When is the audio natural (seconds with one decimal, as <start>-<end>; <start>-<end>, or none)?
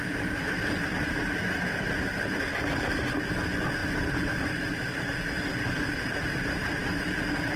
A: 0.0-7.6